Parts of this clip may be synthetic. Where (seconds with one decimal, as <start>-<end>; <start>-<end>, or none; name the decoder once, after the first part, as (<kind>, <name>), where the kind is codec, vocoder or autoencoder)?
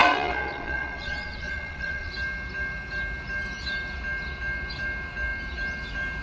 0.0-2.1 (vocoder, Vocos)